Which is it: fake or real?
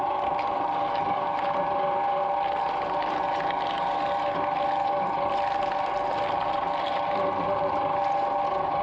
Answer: real